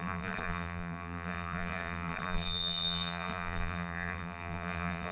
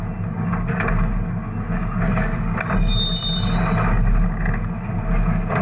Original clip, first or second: second